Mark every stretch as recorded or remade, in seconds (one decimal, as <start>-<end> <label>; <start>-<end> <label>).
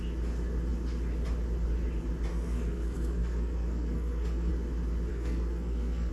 0.0-2.3 recorded; 2.3-4.5 remade; 4.5-5.1 recorded; 5.1-6.1 remade